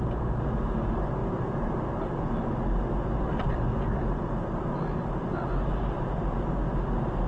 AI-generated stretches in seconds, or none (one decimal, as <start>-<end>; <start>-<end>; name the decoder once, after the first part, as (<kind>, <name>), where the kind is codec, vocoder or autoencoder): none